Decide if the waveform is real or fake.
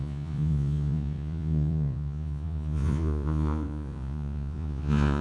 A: fake